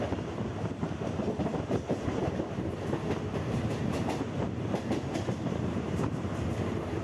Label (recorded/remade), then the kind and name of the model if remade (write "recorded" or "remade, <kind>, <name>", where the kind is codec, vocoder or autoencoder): remade, vocoder, BigVGAN v2